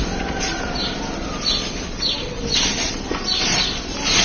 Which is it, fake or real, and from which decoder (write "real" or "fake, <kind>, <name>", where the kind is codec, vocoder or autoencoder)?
real